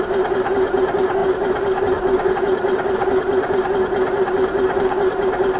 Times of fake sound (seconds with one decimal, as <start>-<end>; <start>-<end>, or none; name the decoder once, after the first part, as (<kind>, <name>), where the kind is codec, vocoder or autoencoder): none